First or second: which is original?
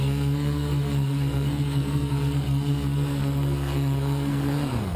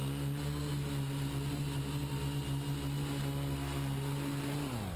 second